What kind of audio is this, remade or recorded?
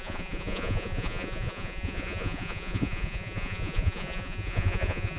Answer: remade